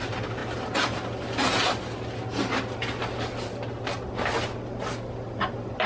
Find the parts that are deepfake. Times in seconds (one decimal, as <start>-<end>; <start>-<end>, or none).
none